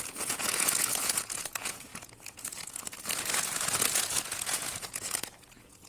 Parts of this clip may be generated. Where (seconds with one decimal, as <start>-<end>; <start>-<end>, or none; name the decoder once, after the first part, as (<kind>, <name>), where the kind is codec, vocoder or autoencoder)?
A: 0.0-5.9 (vocoder, Vocos)